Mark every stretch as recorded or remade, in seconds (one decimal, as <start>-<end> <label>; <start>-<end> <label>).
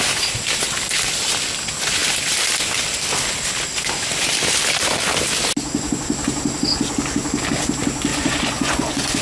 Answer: 0.0-8.1 recorded; 8.1-9.2 remade